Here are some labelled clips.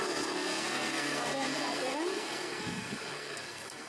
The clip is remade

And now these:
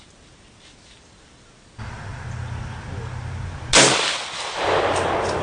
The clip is recorded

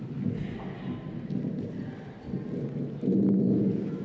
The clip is recorded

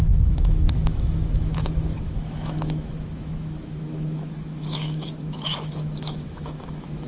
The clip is remade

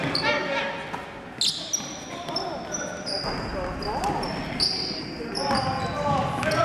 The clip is recorded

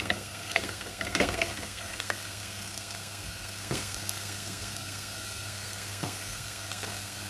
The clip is remade